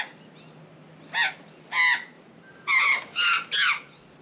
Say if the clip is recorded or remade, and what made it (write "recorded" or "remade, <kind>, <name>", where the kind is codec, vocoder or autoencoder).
recorded